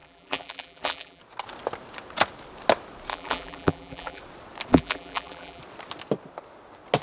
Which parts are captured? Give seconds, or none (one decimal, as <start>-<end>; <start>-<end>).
1.2-3.1; 4.2-4.7; 5.6-7.0